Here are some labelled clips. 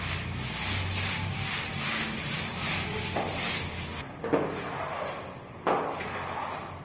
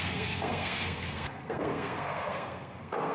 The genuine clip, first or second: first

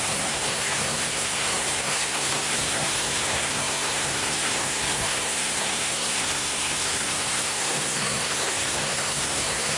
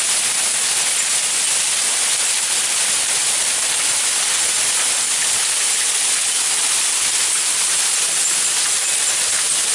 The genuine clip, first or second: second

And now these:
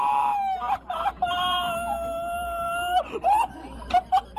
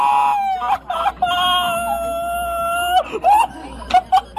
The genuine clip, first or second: second